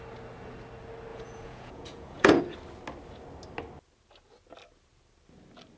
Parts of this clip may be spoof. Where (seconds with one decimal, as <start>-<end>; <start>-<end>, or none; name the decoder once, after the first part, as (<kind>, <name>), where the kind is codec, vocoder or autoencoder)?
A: 1.1-2.4 (vocoder, Vocos)

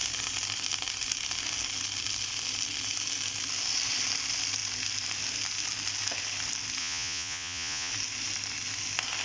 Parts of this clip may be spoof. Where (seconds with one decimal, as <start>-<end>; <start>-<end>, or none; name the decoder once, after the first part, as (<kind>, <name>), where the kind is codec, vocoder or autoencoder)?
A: 6.8-7.9 (vocoder, Vocos)

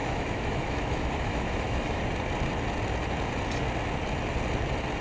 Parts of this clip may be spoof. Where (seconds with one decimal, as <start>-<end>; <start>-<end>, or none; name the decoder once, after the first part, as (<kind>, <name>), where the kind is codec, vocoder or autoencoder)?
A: 0.0-2.0 (autoencoder, DAC-VAE)

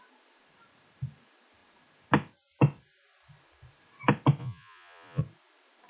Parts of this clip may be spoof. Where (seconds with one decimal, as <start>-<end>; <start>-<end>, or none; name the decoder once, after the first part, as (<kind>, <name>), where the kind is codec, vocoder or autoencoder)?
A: 4.4-5.2 (vocoder, Vocos)

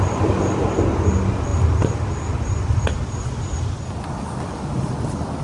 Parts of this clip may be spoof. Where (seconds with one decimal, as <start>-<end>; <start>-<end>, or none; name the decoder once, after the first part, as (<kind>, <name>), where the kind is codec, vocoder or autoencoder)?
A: none

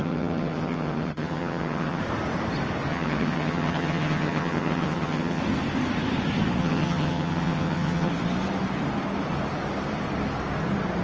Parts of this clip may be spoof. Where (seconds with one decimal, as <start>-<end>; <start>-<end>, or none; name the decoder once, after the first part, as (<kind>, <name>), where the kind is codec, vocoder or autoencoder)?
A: 0.0-2.0 (vocoder, HiFi-GAN); 2.9-5.4; 6.6-8.1